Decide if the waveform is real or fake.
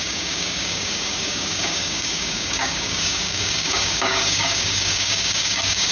fake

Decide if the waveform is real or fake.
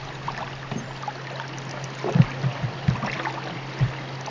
real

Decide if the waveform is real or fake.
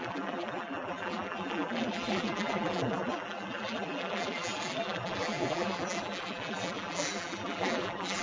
fake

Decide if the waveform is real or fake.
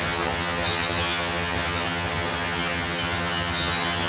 fake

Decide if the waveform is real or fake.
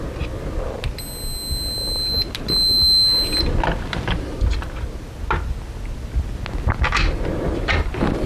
real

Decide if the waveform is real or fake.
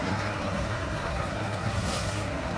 fake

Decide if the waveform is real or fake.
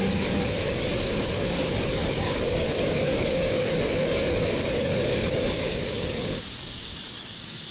fake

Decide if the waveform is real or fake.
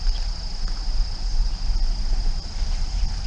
real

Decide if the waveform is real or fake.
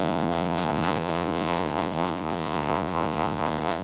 fake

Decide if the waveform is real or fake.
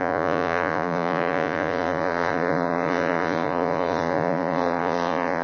fake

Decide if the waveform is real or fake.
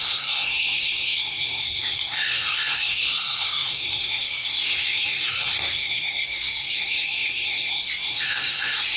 fake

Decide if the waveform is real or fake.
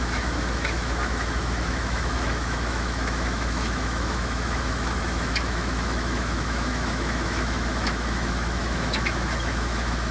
fake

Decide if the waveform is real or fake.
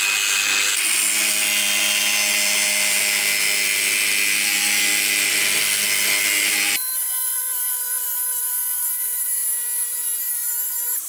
real